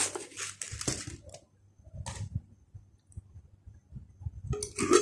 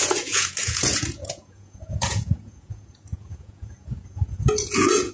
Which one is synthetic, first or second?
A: second